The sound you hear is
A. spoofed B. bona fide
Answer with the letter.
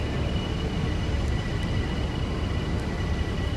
B